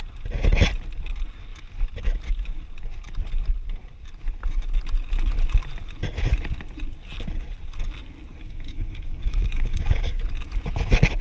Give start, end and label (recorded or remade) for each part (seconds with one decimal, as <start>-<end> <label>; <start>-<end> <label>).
0.0-8.3 recorded; 8.3-10.2 remade; 10.2-11.2 recorded